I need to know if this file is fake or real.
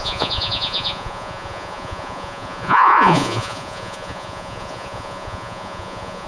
fake